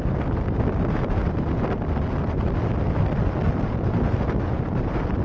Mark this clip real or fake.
real